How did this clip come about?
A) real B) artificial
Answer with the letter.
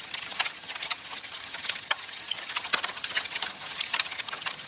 B